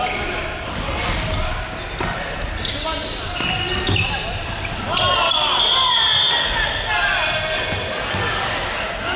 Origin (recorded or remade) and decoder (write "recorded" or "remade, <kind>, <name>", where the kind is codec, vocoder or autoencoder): recorded